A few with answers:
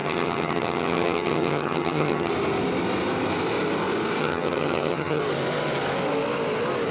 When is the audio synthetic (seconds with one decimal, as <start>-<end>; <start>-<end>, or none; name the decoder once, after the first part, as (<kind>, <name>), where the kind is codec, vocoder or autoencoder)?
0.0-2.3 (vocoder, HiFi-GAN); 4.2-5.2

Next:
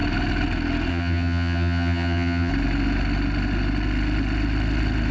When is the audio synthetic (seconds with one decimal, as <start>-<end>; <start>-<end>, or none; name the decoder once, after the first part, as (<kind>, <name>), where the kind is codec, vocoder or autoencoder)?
0.9-2.5 (vocoder, HiFi-GAN)

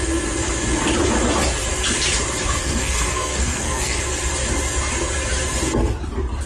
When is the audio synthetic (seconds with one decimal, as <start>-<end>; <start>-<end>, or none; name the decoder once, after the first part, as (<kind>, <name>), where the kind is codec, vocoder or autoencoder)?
2.6-4.0 (codec, SNAC)

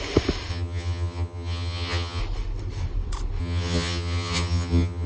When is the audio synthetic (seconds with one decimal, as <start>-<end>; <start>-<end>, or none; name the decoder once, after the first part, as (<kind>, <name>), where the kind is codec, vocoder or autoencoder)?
0.5-2.2 (vocoder, HiFi-GAN); 3.4-5.1

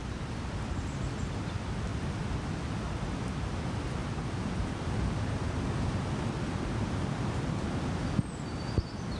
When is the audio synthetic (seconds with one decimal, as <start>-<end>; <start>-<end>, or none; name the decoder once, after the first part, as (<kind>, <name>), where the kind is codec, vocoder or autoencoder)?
none

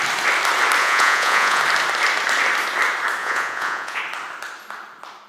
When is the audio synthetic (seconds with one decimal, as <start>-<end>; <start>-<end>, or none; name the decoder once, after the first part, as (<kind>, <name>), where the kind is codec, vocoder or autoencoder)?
0.8-1.6 (vocoder, Vocos); 3.2-4.0